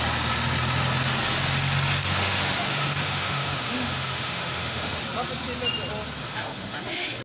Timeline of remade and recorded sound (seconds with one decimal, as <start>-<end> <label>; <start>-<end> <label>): 0.0-2.0 recorded; 2.0-5.0 remade; 5.0-6.2 recorded; 6.2-7.2 remade